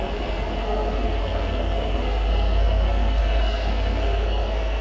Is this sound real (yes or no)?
no